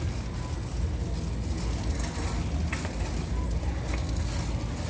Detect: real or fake real